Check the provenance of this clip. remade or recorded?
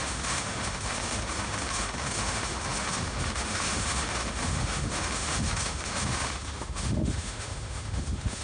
remade